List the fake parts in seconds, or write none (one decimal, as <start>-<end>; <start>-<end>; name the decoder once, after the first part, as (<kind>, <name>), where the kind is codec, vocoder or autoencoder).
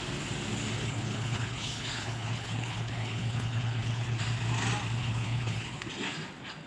0.8-4.2 (codec, HILCodec); 5.0-5.9